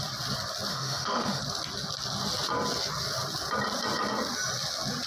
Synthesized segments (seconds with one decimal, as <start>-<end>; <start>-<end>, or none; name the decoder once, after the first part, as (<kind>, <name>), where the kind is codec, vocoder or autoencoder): 0.7-1.4 (autoencoder, DAC-VAE)